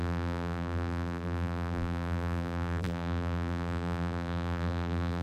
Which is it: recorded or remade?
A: remade